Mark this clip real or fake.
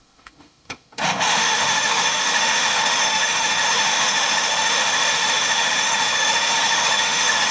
fake